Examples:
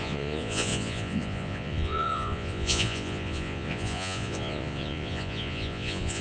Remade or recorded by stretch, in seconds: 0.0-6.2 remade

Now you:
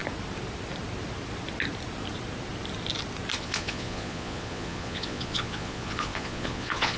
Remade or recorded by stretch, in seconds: 0.0-3.4 recorded; 3.4-7.0 remade

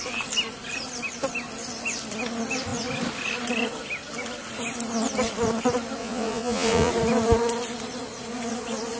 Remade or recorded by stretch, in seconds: 0.0-6.0 recorded; 6.0-6.9 remade; 6.9-9.0 recorded

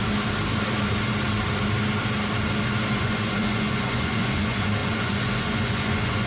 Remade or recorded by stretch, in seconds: 0.0-2.9 recorded; 2.9-6.3 remade